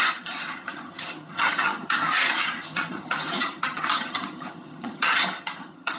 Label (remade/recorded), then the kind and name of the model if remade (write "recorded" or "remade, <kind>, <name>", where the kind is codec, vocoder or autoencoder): remade, vocoder, HiFi-GAN